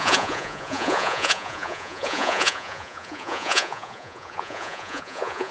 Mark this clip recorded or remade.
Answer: remade